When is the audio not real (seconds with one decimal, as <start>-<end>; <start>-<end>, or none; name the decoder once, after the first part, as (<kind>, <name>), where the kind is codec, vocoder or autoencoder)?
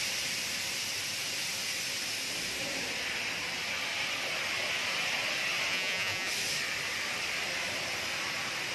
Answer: 5.7-6.3 (vocoder, Vocos)